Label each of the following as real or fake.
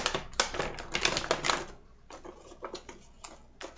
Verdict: real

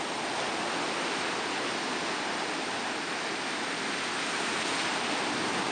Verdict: real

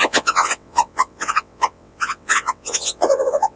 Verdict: fake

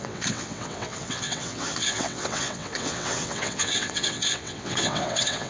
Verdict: fake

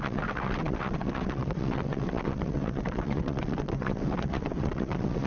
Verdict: fake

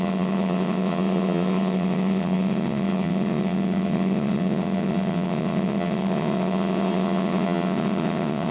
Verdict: fake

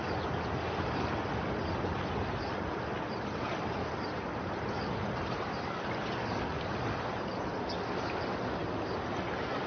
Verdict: real